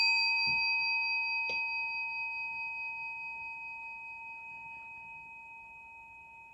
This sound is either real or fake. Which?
real